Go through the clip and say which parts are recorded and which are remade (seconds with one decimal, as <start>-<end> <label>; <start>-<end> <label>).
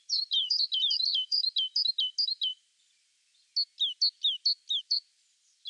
0.0-1.4 remade; 1.4-4.8 recorded; 4.8-5.7 remade